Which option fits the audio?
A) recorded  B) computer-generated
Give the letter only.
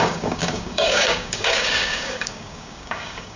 B